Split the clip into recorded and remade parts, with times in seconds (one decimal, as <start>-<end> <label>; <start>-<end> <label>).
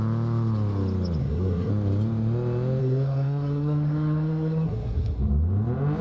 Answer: 0.0-1.2 recorded; 1.2-1.7 remade; 1.7-2.8 recorded; 2.8-5.2 remade; 5.2-6.0 recorded